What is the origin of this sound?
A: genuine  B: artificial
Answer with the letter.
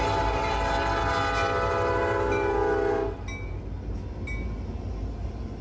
A